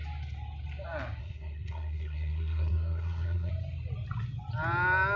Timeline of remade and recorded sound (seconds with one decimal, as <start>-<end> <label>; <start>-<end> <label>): 0.0-1.2 recorded; 1.2-3.5 remade; 3.5-5.2 recorded